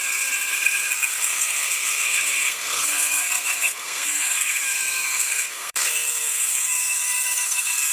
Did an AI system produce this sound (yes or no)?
yes